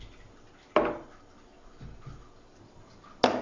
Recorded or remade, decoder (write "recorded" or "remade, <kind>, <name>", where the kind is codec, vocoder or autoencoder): recorded